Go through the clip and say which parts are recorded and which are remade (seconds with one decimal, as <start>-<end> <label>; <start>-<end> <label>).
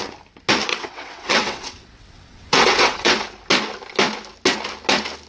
0.0-0.7 recorded; 0.7-3.2 remade; 3.2-5.3 recorded